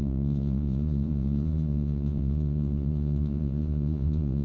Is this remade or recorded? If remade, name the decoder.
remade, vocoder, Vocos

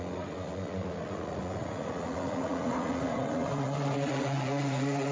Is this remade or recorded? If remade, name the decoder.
remade, vocoder, Vocos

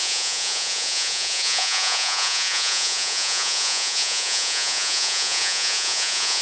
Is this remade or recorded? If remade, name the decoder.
remade, vocoder, Vocos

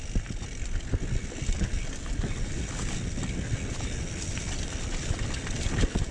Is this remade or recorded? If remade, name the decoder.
recorded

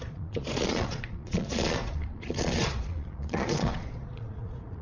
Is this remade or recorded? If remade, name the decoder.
remade, vocoder, Vocos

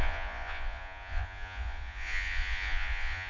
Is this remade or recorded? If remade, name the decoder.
remade, vocoder, Vocos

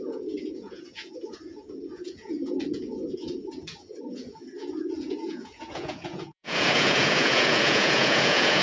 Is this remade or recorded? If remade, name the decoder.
remade, vocoder, Vocos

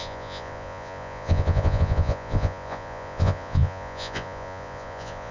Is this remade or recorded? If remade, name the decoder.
remade, vocoder, Vocos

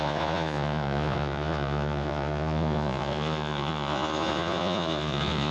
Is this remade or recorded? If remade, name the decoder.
remade, vocoder, Vocos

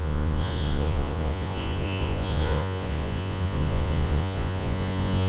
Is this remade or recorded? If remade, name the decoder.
remade, vocoder, Vocos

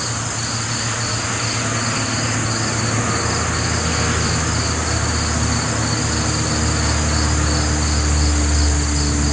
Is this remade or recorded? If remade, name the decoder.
recorded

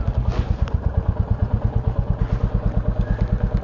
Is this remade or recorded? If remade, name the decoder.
recorded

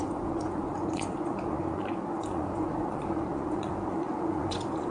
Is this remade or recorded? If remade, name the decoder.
remade, vocoder, Vocos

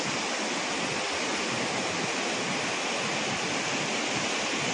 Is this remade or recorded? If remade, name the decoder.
recorded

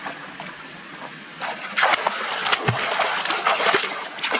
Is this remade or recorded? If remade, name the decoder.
recorded